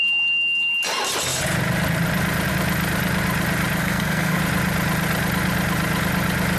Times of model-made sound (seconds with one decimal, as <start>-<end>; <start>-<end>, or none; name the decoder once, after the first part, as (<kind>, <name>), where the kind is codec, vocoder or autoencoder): 3.8-4.4 (codec, SNAC)